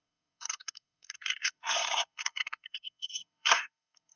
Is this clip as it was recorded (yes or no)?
no